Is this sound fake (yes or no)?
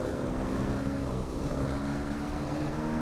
yes